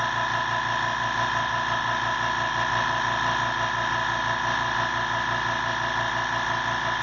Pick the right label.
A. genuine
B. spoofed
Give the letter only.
A